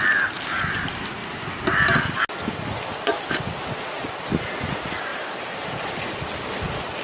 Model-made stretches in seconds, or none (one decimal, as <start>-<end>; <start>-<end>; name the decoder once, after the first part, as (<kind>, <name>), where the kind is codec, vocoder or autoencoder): 5.1-5.9 (vocoder, BigVGAN v2)

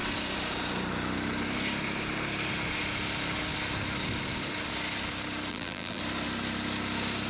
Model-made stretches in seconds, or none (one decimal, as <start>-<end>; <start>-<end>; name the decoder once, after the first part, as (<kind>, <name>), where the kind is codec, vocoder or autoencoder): 5.5-6.0 (vocoder, BigVGAN v2)

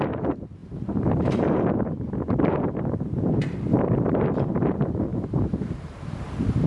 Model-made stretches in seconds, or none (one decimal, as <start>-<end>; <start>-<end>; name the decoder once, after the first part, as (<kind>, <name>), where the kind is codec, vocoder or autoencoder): 0.0-6.7 (vocoder, BigVGAN v2)

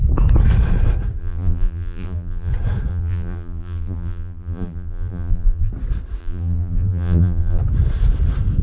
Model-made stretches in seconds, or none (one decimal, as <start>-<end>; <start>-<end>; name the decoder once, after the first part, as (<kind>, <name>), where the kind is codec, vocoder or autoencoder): 1.2-2.5 (vocoder, BigVGAN v2); 2.9-5.7; 6.2-7.6

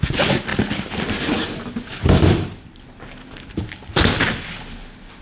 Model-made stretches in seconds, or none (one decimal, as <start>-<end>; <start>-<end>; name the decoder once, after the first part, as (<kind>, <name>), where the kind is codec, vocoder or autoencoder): none

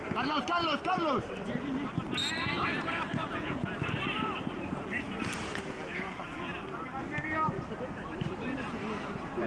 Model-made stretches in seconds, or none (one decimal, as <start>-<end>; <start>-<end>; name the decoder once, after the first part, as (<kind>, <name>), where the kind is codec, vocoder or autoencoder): 2.2-5.2 (vocoder, BigVGAN v2); 7.0-9.5